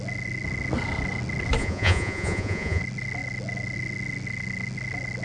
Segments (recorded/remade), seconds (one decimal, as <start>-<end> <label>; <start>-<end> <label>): 0.0-1.6 recorded; 1.6-2.8 remade; 2.8-5.2 recorded